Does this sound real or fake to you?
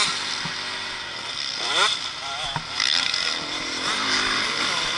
real